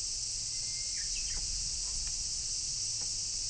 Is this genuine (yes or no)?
yes